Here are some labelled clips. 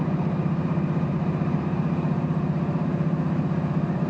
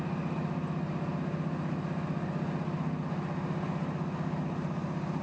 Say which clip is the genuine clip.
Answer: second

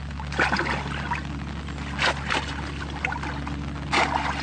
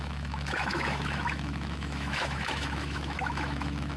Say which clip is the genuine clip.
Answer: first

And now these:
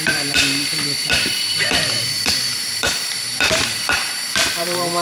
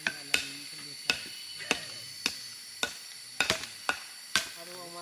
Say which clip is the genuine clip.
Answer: second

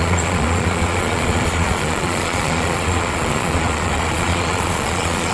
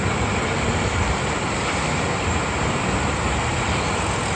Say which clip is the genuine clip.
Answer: second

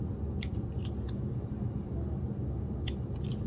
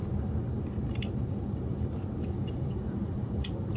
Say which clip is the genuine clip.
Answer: first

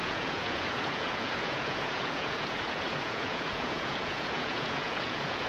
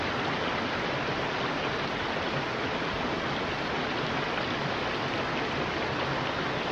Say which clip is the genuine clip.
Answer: second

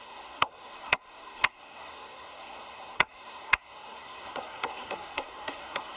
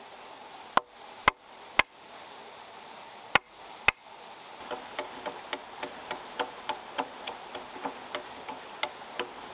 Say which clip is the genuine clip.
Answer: second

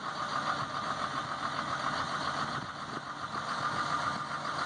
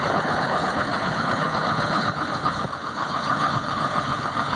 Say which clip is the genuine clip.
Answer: first